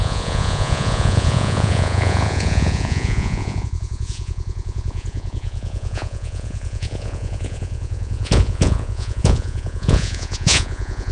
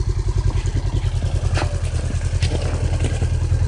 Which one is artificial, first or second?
first